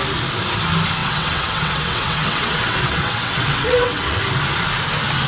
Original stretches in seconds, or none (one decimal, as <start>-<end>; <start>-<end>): 0.0-1.0; 4.2-5.3